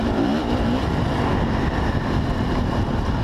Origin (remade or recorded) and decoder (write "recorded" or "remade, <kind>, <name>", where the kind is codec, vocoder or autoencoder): recorded